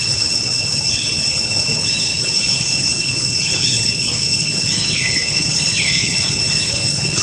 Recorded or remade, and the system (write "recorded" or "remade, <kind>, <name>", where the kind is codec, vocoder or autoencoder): remade, codec, HILCodec